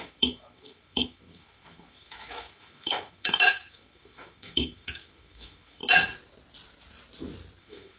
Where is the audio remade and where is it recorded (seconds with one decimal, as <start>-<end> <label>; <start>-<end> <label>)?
0.0-5.8 remade; 5.8-7.6 recorded; 7.6-8.0 remade